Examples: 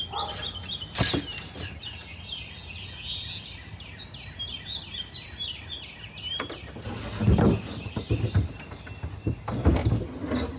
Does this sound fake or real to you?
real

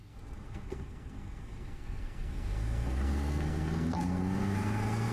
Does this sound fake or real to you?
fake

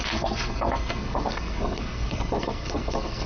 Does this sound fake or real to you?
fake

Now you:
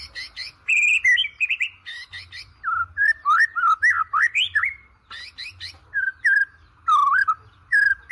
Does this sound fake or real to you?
real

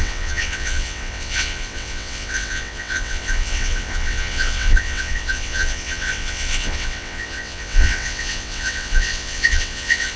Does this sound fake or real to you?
fake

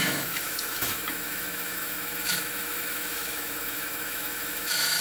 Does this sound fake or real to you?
fake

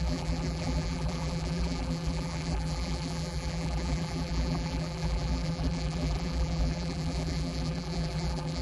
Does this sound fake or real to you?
fake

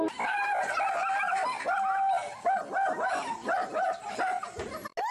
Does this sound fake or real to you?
real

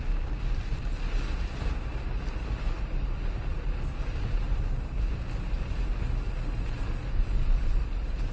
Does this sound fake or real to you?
real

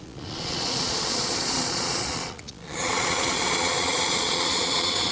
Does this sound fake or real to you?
fake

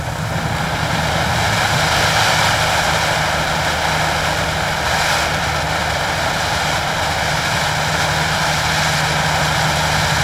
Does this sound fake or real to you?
real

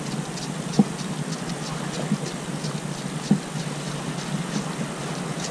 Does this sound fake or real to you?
real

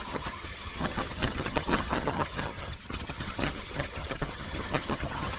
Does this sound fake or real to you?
fake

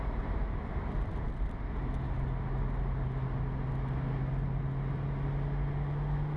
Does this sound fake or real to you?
real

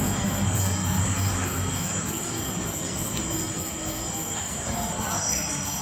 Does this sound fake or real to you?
fake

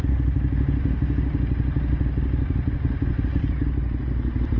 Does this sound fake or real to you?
real